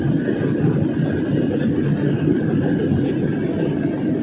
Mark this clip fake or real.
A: real